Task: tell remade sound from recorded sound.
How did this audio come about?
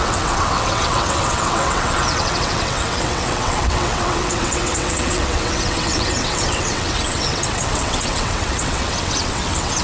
remade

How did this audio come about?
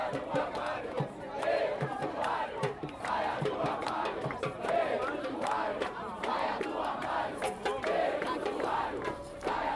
remade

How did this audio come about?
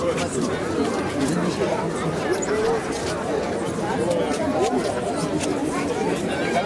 recorded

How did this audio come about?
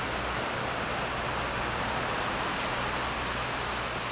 recorded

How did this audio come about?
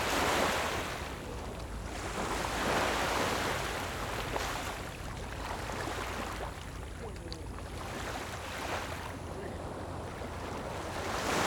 recorded